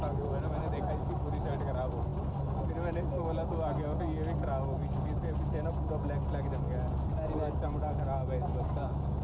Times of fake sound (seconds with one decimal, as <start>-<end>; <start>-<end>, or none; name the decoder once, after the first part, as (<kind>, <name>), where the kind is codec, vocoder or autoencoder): none